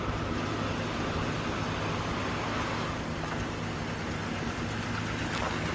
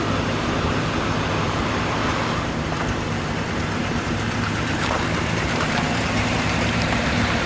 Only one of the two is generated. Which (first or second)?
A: second